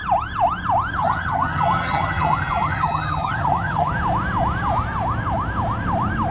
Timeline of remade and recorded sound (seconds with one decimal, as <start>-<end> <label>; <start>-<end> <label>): 0.0-1.0 recorded; 1.0-3.9 remade; 3.9-6.3 recorded